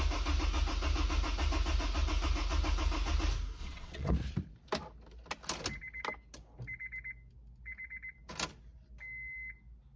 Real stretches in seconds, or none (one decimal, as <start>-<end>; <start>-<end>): 0.0-3.6; 4.1-10.0